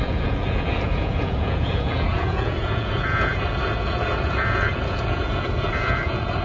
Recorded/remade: remade